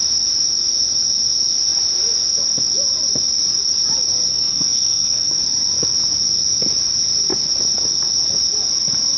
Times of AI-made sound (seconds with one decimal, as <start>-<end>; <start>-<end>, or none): 4.3-5.4

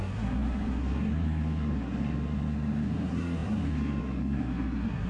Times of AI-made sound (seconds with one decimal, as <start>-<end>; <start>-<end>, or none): 0.0-5.1

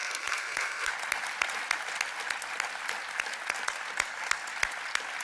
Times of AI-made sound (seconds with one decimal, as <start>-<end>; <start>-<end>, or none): 0.0-0.9

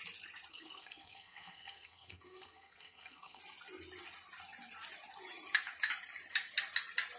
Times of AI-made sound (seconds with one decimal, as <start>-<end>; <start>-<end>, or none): 0.5-3.4

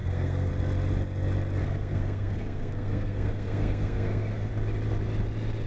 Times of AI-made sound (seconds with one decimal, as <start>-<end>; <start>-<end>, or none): 0.0-0.5; 1.6-4.5

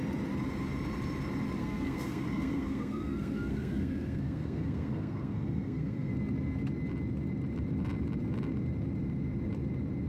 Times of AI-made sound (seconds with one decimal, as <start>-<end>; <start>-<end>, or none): 1.6-6.1